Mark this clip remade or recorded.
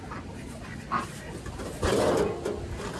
recorded